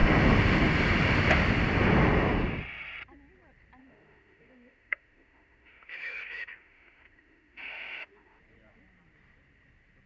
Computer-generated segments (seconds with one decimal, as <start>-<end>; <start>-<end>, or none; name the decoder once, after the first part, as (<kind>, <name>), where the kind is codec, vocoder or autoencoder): 3.8-8.4 (autoencoder, DAC-VAE)